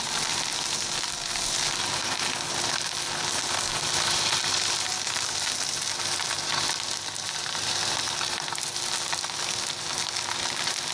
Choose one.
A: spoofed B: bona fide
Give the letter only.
B